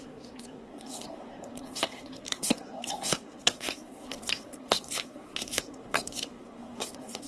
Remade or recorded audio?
remade